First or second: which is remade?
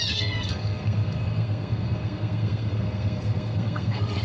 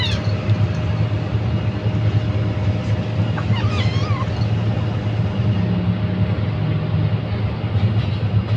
first